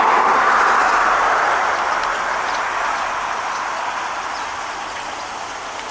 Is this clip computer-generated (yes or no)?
yes